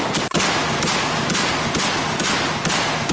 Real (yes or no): yes